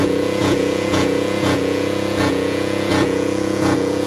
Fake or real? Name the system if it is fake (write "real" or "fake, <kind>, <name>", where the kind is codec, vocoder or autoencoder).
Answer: fake, vocoder, Vocos